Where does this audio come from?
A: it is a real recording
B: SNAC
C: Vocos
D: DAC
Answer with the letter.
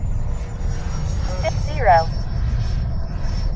A